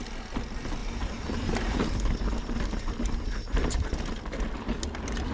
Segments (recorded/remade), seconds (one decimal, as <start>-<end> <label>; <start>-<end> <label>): 0.0-0.8 recorded; 0.8-4.0 remade; 4.0-5.3 recorded